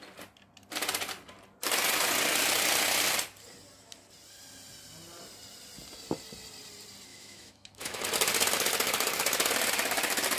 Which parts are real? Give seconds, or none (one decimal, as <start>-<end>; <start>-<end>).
0.0-7.1; 8.0-10.4